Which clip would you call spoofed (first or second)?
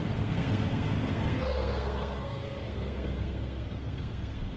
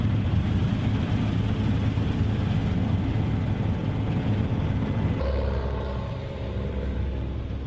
first